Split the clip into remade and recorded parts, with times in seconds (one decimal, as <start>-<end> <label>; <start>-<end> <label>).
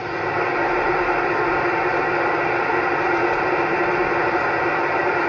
0.0-5.3 recorded